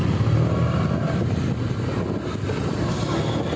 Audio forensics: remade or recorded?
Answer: recorded